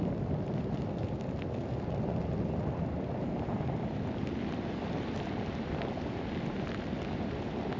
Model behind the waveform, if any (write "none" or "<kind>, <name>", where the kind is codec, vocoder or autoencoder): none